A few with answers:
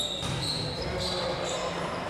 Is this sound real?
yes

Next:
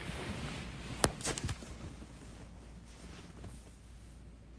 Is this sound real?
yes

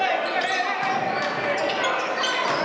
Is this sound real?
yes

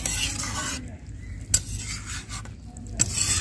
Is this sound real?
yes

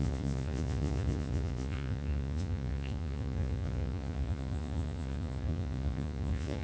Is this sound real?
no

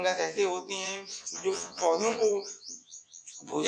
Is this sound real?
no